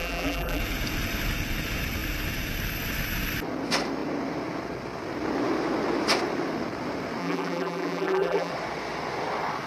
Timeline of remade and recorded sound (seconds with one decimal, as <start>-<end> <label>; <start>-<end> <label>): 0.0-0.6 remade; 0.6-7.2 recorded; 7.2-8.5 remade; 8.5-9.7 recorded